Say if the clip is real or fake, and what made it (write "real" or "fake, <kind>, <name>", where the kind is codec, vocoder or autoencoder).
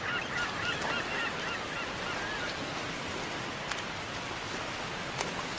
real